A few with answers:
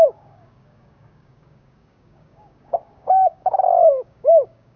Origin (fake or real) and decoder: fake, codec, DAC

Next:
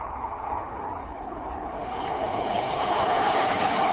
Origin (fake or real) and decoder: fake, codec, HILCodec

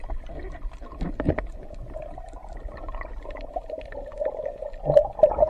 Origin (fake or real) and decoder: real